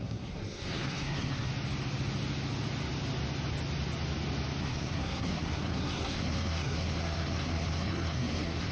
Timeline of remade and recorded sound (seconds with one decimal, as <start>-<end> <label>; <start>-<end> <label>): 0.0-1.5 remade; 1.5-4.6 recorded; 4.6-8.7 remade

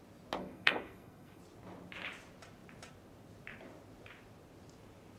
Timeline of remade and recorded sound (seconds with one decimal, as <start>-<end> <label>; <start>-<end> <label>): 0.0-0.4 recorded; 0.4-1.4 remade; 1.4-5.2 recorded

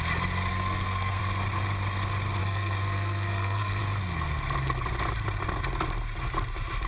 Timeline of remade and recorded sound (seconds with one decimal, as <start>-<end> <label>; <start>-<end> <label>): 0.0-0.5 recorded; 0.5-1.2 remade; 1.2-2.4 recorded; 2.4-3.8 remade; 3.8-6.9 recorded

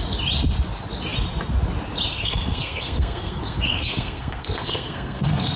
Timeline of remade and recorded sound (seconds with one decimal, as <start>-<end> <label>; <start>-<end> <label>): 0.0-2.1 recorded; 2.1-5.6 remade